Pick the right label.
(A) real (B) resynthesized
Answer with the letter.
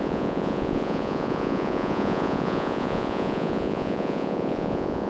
B